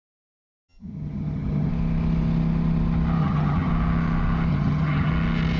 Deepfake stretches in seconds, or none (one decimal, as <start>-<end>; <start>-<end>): 0.7-1.7; 3.2-3.7; 4.5-5.1